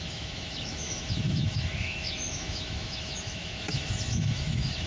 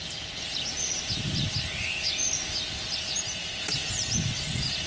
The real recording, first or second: second